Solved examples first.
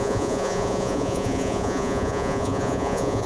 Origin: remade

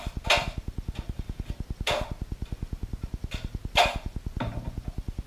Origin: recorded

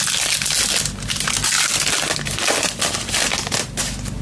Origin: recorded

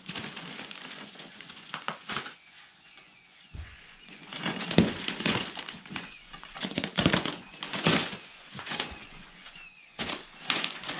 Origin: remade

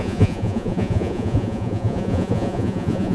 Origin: remade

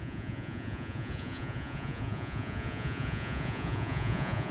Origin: remade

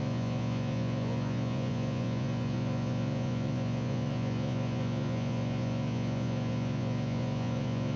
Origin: remade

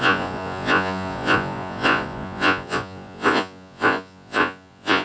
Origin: remade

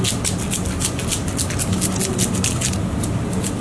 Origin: recorded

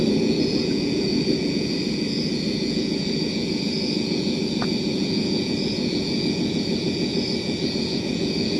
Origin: remade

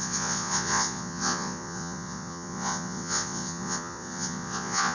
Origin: remade